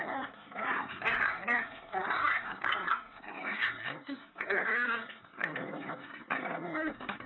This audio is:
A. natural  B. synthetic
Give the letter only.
B